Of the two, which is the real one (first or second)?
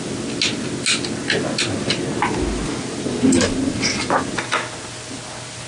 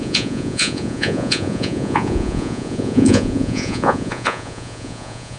first